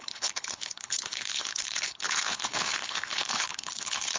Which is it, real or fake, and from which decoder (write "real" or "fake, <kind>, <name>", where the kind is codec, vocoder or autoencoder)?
fake, codec, HILCodec